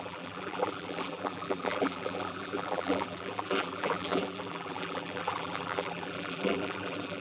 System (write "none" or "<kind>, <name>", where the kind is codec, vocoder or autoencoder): vocoder, BigVGAN v2